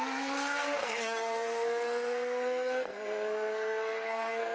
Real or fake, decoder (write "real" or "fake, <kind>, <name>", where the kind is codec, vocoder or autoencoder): fake, codec, SNAC